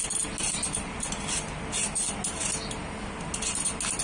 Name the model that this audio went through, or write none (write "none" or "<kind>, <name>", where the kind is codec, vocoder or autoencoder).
none